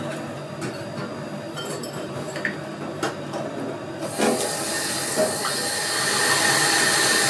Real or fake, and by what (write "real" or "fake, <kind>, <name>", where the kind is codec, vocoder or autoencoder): real